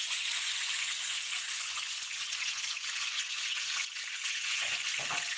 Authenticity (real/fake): fake